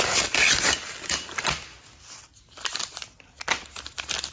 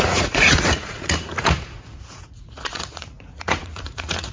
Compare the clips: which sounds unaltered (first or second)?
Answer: first